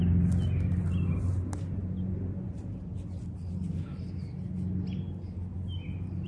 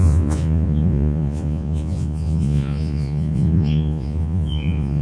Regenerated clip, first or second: second